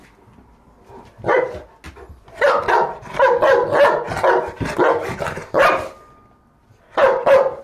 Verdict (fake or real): real